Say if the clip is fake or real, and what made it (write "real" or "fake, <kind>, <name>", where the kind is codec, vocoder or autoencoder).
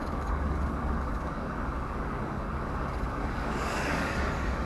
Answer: fake, codec, DAC